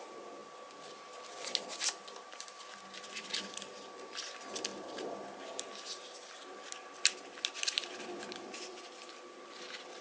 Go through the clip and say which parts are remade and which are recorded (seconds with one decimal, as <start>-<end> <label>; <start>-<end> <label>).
0.0-10.0 recorded

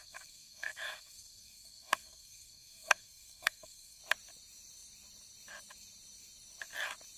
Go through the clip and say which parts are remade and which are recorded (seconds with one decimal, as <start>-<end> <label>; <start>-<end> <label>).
0.0-4.0 remade; 4.0-7.2 recorded

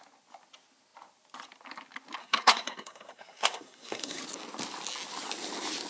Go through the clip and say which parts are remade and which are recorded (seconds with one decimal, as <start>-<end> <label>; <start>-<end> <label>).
0.0-2.2 recorded; 2.2-4.2 remade; 4.2-5.9 recorded